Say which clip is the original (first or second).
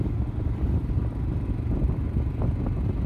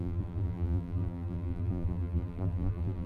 first